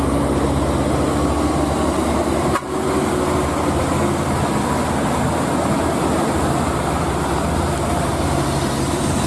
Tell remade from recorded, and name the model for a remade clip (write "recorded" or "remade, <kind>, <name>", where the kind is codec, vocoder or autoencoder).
recorded